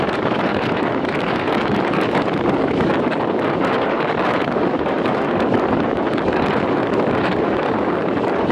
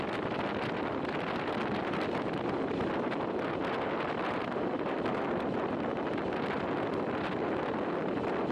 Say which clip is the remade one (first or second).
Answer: first